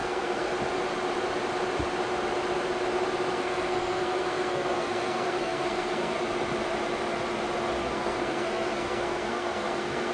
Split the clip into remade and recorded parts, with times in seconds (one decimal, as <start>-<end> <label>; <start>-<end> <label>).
0.0-0.5 remade; 0.5-3.3 recorded; 3.3-6.2 remade; 6.2-7.8 recorded; 7.8-10.1 remade